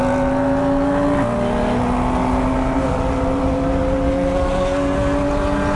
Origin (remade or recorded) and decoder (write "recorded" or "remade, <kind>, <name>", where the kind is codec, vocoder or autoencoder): recorded